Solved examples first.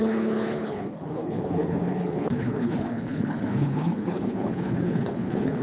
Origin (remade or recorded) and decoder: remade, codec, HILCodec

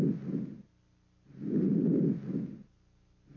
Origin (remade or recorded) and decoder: recorded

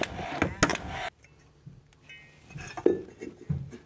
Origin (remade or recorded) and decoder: recorded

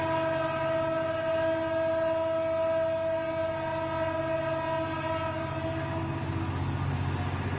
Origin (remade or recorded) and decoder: recorded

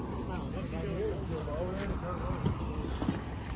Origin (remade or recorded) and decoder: recorded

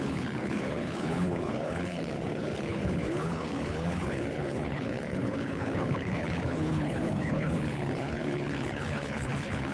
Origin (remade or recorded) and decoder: remade, codec, HILCodec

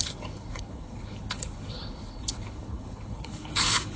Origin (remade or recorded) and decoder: remade, codec, HILCodec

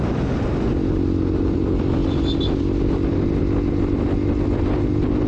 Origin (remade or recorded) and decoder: recorded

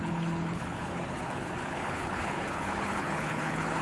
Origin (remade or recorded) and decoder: remade, codec, HILCodec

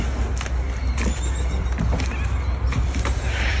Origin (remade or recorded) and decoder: recorded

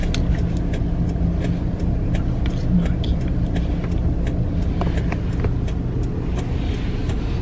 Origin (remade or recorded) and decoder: recorded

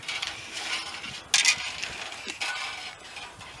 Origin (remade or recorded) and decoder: recorded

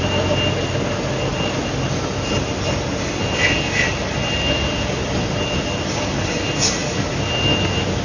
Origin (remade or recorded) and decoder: recorded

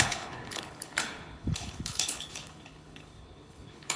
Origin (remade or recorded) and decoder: remade, codec, HILCodec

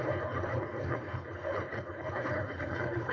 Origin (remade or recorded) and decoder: remade, codec, HILCodec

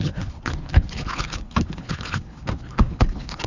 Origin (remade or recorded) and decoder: remade, codec, HILCodec